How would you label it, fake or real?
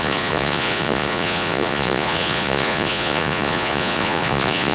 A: fake